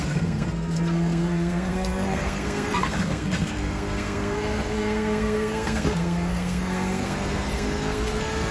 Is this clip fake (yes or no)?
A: yes